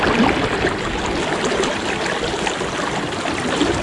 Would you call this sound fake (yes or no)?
no